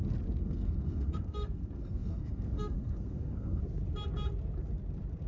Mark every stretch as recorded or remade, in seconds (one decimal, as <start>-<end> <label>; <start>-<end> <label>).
0.0-0.4 recorded; 0.4-3.6 remade; 3.6-5.3 recorded